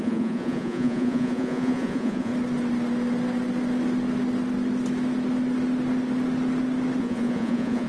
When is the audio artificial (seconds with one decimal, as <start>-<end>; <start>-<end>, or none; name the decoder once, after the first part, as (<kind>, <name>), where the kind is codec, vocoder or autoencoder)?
0.0-2.3 (vocoder, Vocos); 7.0-7.9